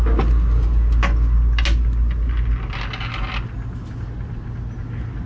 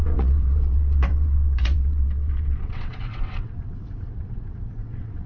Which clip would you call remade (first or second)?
second